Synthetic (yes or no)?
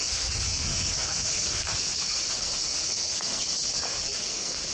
yes